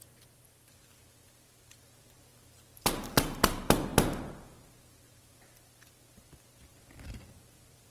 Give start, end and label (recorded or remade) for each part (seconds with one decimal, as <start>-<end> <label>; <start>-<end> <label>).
0.0-7.9 recorded

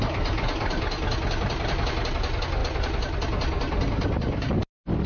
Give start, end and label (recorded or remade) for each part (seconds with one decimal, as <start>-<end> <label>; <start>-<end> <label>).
0.0-5.1 recorded

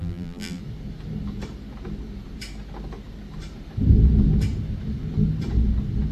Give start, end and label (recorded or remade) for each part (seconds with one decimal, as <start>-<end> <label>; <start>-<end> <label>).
0.0-0.6 remade; 0.6-6.1 recorded

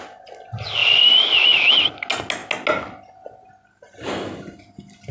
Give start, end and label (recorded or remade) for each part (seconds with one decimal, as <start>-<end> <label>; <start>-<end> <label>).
0.0-5.1 recorded

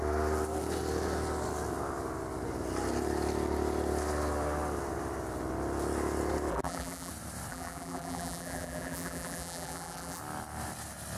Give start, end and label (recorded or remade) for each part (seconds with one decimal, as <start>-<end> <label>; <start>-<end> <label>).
0.0-6.5 recorded; 6.5-7.1 remade; 7.1-7.5 recorded; 7.5-10.2 remade; 10.2-11.2 recorded

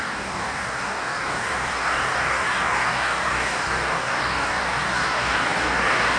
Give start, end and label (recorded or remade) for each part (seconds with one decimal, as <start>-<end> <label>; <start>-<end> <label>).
0.0-6.2 remade

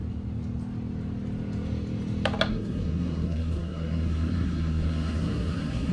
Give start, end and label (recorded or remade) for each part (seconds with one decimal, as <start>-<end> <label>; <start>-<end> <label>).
0.0-2.5 recorded; 2.5-5.9 remade